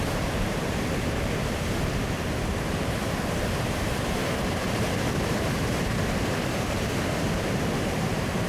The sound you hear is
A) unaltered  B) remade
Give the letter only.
B